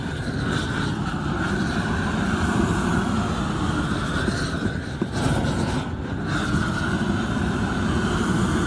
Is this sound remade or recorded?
recorded